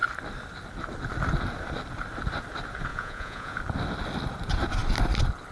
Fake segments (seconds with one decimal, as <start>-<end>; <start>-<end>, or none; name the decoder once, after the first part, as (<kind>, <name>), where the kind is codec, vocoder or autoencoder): 2.9-3.6 (vocoder, Vocos)